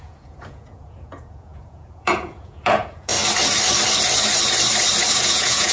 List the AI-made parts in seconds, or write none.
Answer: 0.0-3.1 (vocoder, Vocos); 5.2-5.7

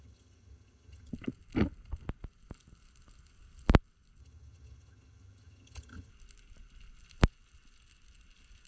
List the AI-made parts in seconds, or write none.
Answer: 0.0-1.1 (vocoder, HiFi-GAN); 4.2-6.1

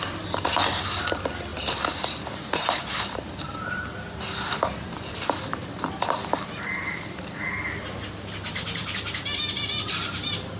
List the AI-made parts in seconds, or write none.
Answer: 1.5-5.6 (vocoder, BigVGAN v2); 8.8-10.6

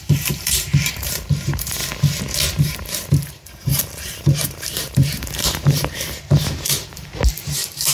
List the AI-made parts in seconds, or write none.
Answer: 0.0-1.8 (vocoder, BigVGAN v2); 2.6-7.9

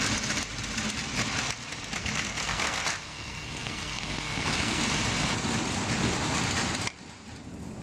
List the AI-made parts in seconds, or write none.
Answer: 2.0-4.8 (codec, SNAC)

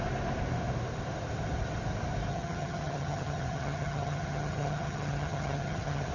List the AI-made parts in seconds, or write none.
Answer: 2.3-6.1 (vocoder, HiFi-GAN)

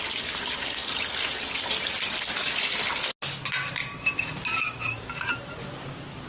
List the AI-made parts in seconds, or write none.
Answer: none

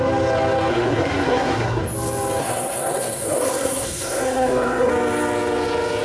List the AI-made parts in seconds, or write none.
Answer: 0.7-1.8 (codec, SNAC); 2.4-4.9